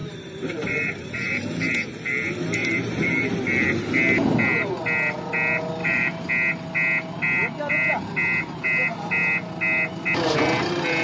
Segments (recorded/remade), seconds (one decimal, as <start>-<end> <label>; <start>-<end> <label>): 0.0-1.7 remade; 1.7-2.6 recorded; 2.6-3.3 remade; 3.3-5.8 recorded; 5.8-6.3 remade; 6.3-11.0 recorded